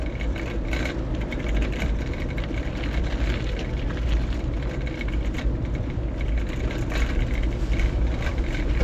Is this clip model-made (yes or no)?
no